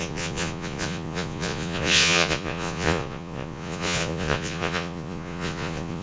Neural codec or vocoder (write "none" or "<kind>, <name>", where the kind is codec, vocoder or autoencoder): vocoder, Vocos